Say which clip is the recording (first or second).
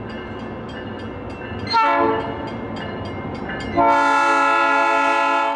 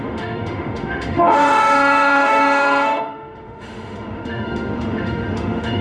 first